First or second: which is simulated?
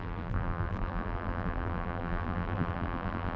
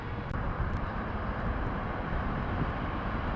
first